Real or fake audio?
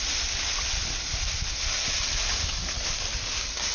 real